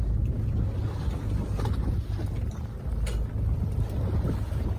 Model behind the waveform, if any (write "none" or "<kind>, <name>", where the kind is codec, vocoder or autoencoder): none